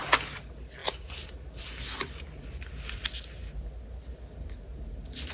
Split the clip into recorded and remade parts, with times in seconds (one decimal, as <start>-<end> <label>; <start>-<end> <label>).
0.0-5.3 recorded

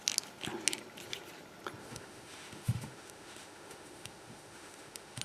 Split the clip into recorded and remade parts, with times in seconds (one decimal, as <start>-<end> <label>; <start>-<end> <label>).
0.0-1.8 recorded; 1.8-5.2 remade

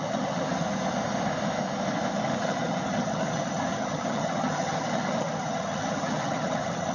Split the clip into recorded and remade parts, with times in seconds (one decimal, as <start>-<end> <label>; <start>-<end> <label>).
0.0-0.5 remade; 0.5-2.4 recorded; 2.4-6.9 remade